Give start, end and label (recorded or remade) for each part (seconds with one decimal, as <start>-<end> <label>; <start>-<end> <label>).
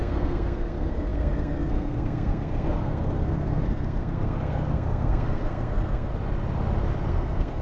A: 0.0-6.1 remade; 6.1-7.1 recorded; 7.1-7.6 remade